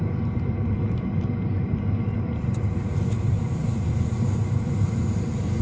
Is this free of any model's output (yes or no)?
yes